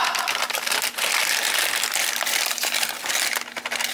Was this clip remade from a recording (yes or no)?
no